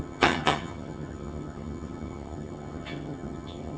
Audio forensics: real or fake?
fake